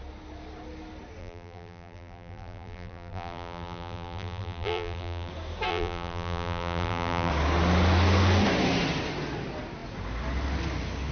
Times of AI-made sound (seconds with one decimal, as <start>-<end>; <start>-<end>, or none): 1.2-5.3; 5.7-7.3